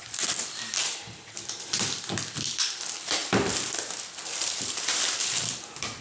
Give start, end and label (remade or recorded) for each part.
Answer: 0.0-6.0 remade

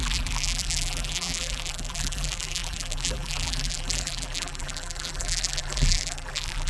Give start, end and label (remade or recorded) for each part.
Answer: 0.0-6.7 remade